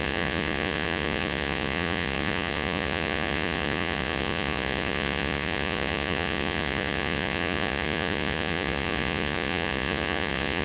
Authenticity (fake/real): fake